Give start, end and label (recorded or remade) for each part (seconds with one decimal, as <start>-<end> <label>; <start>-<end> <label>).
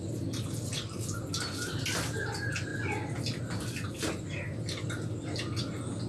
0.0-6.1 recorded